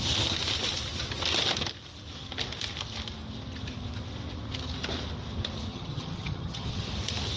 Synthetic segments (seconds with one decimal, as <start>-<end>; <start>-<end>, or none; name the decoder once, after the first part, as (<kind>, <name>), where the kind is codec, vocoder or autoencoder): 5.7-6.9 (vocoder, HiFi-GAN)